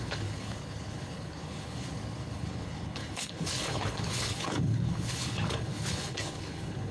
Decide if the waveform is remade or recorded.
remade